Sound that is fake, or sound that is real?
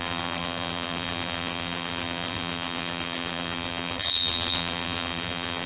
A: fake